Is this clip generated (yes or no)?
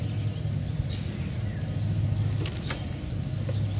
no